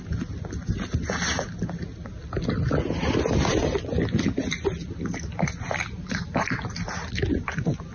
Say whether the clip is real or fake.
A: real